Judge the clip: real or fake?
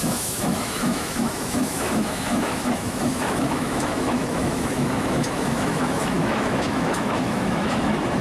fake